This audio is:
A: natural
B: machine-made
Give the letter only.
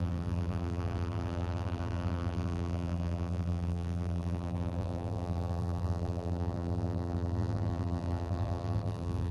B